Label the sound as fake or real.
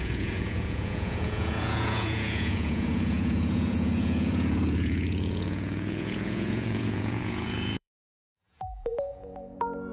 fake